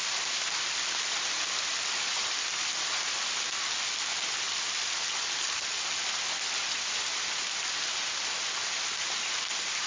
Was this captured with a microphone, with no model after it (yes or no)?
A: yes